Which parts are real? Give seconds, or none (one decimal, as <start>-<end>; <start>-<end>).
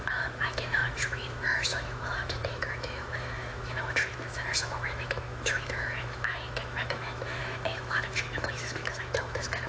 none